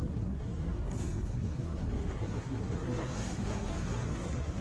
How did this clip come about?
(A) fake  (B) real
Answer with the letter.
A